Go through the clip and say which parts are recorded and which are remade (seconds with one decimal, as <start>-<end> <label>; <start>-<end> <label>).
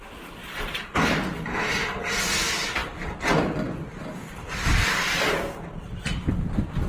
0.0-0.4 recorded; 0.4-2.2 remade; 2.2-4.4 recorded; 4.4-6.0 remade; 6.0-6.9 recorded